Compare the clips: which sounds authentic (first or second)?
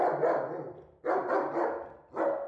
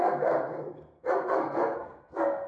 first